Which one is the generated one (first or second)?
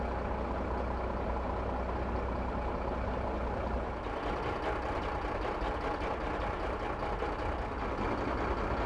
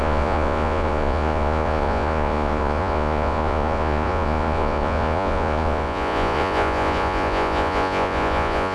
second